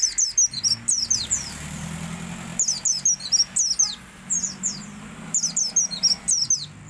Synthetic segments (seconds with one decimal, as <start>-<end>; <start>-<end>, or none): none